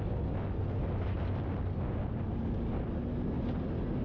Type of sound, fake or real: real